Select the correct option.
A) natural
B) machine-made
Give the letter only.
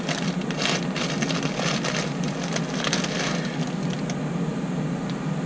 A